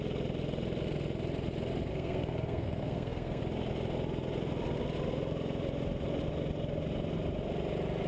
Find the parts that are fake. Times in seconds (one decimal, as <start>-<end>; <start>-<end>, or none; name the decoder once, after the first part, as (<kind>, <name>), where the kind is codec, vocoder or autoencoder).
1.9-3.4 (codec, SNAC)